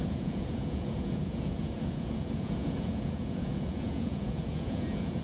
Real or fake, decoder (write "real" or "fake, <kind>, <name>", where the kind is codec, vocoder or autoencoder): fake, vocoder, Vocos